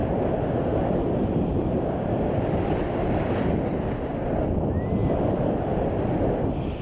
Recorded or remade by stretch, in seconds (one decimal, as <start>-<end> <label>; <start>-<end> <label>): 0.0-3.9 remade; 3.9-5.0 recorded; 5.0-5.8 remade; 5.8-6.8 recorded